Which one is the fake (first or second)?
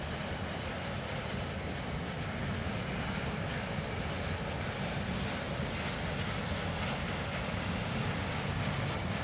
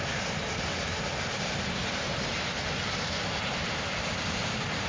second